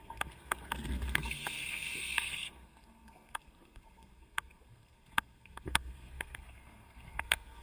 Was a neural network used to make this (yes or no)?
yes